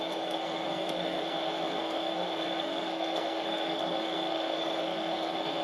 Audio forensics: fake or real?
fake